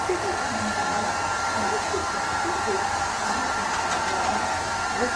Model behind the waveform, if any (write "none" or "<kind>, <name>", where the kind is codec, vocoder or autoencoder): none